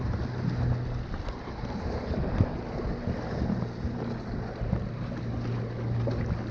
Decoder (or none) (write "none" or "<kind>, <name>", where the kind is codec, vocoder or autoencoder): none